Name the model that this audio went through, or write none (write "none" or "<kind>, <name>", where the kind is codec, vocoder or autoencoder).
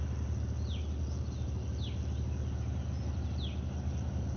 none